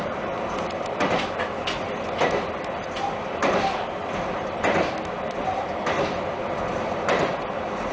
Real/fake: real